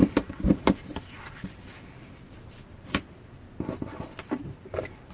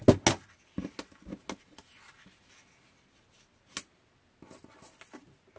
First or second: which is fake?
first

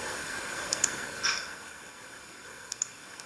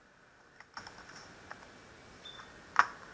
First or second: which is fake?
first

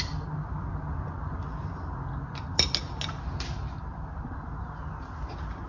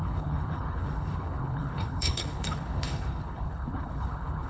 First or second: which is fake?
second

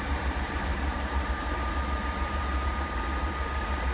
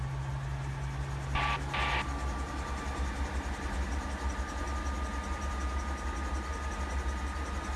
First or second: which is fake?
first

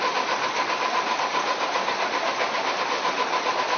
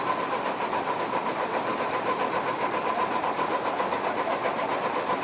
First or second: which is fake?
first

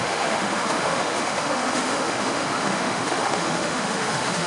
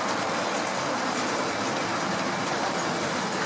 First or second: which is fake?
first